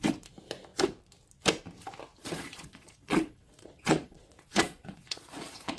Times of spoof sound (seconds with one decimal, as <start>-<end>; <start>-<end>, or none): 2.2-5.8